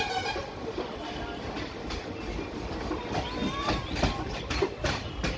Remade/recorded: recorded